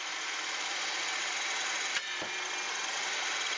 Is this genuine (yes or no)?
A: yes